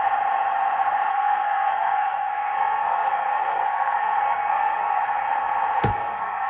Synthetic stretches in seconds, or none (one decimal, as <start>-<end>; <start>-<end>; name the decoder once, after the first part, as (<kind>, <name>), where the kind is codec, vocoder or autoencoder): 1.1-5.0 (codec, SNAC); 5.9-6.5